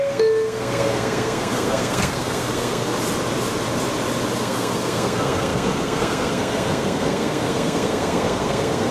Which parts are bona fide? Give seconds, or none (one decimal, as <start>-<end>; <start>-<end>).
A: 2.9-4.4